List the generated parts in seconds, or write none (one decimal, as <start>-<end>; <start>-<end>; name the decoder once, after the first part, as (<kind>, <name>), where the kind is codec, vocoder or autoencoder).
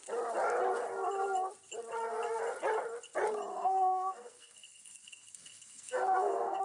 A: 3.5-6.6 (codec, SNAC)